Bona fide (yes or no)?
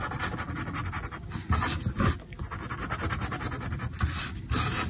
yes